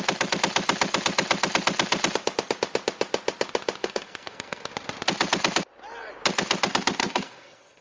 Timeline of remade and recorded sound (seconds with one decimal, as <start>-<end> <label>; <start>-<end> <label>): 0.0-3.8 recorded; 3.8-4.7 remade; 4.7-7.0 recorded; 7.0-7.8 remade